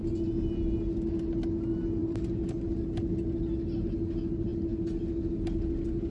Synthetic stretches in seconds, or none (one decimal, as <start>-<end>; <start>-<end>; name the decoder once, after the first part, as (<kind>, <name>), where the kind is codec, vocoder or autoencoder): none